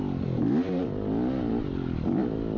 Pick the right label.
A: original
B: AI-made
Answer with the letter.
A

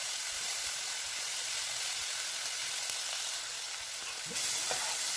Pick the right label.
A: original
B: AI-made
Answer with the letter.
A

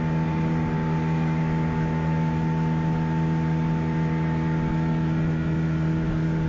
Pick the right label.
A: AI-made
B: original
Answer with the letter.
B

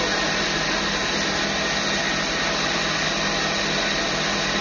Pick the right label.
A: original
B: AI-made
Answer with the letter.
A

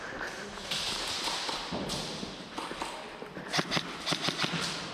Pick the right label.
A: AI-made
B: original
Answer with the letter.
B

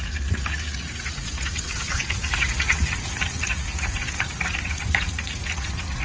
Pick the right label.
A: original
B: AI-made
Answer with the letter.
B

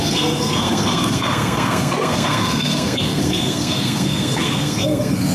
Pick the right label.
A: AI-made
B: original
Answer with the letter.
A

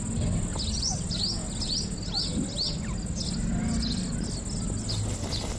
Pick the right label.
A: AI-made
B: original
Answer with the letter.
B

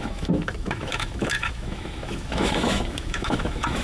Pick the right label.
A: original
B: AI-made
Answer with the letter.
B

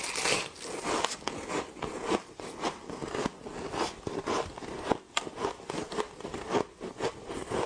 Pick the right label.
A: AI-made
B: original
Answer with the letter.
B